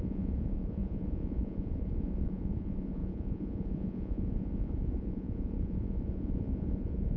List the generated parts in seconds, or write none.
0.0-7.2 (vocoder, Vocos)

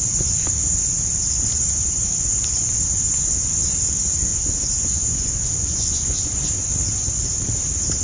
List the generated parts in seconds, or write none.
4.3-6.5 (vocoder, Vocos)

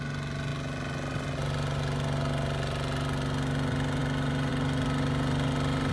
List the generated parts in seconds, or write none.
none

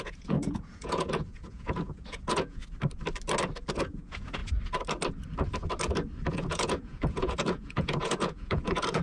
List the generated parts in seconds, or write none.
0.0-2.6 (vocoder, Vocos); 3.7-4.4; 6.3-9.0